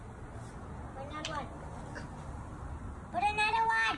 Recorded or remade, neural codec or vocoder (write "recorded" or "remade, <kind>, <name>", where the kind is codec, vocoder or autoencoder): recorded